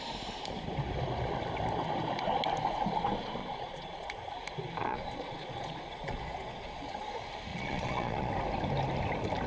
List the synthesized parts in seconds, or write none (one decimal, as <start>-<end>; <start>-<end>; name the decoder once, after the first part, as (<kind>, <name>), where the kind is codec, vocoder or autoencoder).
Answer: 3.4-4.3 (vocoder, Vocos); 4.8-7.0; 7.5-8.3